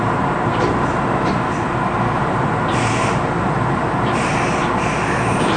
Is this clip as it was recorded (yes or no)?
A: yes